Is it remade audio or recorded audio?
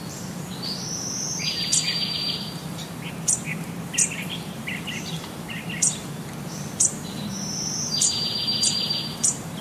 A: remade